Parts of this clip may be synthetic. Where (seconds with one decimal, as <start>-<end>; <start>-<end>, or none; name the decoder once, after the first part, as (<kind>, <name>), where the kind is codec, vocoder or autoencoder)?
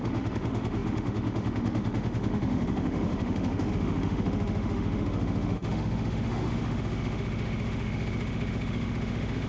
0.0-9.5 (autoencoder, DAC-VAE)